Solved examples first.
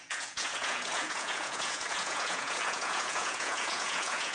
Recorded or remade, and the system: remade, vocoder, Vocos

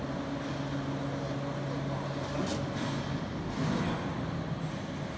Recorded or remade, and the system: recorded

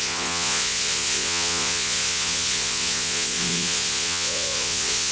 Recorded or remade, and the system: remade, vocoder, Vocos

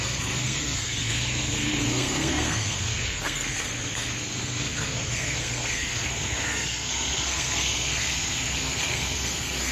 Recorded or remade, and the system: remade, codec, SNAC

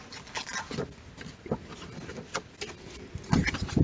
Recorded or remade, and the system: recorded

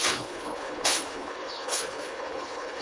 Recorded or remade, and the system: remade, codec, HILCodec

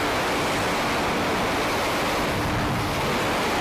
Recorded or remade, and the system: recorded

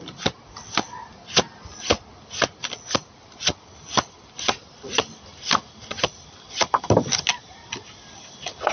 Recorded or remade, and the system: recorded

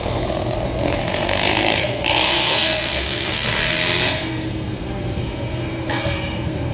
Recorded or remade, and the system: remade, codec, SNAC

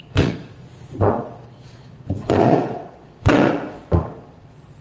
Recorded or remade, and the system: remade, vocoder, Vocos